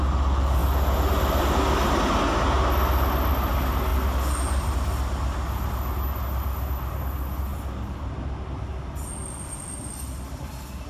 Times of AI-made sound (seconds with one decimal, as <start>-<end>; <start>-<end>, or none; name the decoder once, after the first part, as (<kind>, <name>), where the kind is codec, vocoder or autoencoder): none